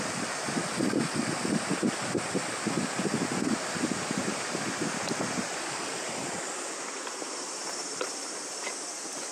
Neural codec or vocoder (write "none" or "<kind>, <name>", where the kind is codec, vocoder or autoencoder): none